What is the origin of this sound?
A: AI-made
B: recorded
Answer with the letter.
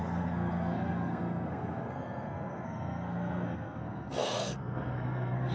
A